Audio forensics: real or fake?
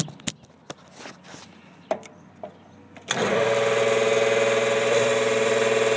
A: real